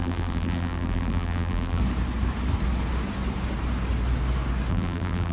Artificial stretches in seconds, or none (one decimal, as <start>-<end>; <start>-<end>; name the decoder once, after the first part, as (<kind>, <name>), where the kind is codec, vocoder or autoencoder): 0.0-1.8 (vocoder, BigVGAN v2); 4.7-5.3